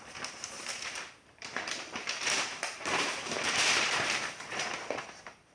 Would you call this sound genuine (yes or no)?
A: no